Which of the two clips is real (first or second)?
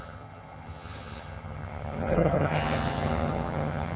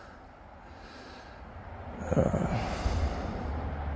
second